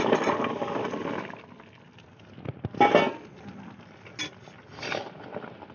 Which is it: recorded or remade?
recorded